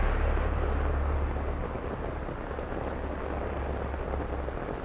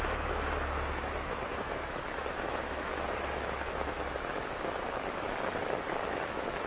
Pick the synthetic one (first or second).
second